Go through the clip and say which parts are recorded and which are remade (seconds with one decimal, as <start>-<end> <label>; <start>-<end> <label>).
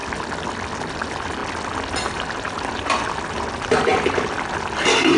0.0-0.9 recorded; 0.9-1.4 remade; 1.4-2.0 recorded; 2.0-5.2 remade